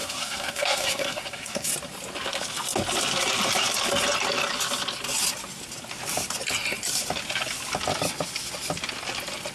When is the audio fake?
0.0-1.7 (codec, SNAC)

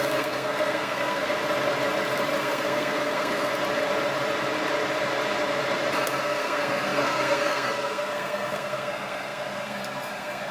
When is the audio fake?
0.0-1.3 (codec, SNAC); 2.4-3.5; 6.2-10.5

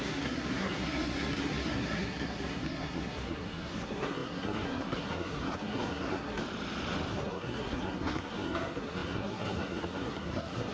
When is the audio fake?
0.0-6.4 (codec, SNAC); 7.1-10.7

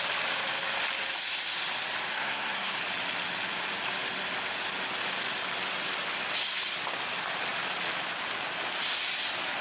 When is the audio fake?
2.1-2.8 (codec, SNAC)